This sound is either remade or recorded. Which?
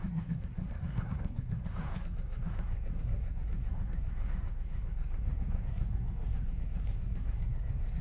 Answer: remade